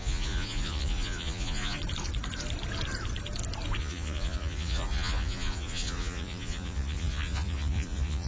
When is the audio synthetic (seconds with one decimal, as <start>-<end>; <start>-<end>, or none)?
0.0-1.8; 3.8-8.3